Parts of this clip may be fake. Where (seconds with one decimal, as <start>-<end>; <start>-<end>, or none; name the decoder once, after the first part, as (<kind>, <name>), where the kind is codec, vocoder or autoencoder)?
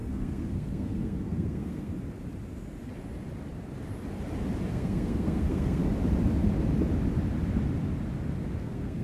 0.0-1.9 (codec, SNAC); 4.7-5.8; 8.6-9.0